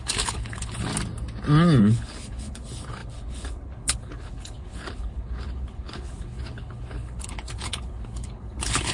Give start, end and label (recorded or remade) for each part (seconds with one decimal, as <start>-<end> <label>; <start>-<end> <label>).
0.0-0.9 remade; 0.9-1.8 recorded; 1.8-8.9 remade